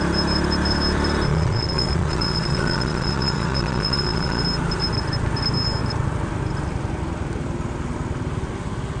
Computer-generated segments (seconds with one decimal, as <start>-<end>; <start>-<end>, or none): 1.3-4.4